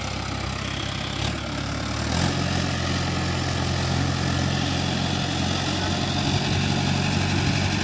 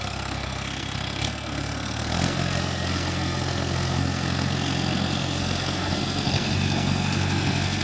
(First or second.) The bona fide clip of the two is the first